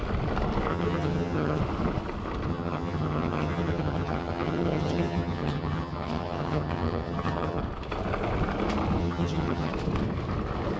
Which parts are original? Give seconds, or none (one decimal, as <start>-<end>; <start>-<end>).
0.0-0.7; 1.6-2.5; 7.6-9.0; 9.7-10.8